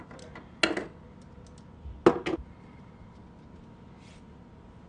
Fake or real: real